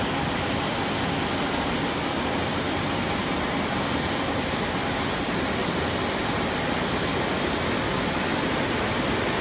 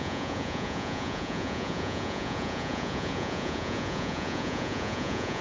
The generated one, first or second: second